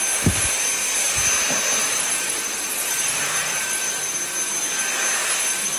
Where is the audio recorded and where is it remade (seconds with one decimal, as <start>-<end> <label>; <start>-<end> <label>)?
0.0-1.8 recorded; 1.8-3.8 remade; 3.8-5.8 recorded